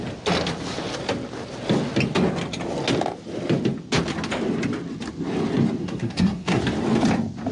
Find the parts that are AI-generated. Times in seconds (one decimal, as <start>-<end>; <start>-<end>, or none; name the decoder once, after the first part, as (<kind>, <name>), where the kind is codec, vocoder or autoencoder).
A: 5.8-6.6 (codec, SNAC)